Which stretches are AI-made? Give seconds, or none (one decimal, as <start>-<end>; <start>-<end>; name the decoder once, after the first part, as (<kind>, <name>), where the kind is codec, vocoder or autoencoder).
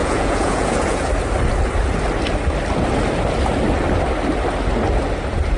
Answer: 0.0-1.1 (vocoder, Vocos)